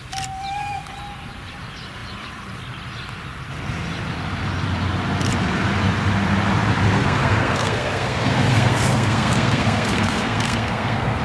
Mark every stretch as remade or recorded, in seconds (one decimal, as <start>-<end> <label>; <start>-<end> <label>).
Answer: 0.0-7.0 recorded; 7.0-11.2 remade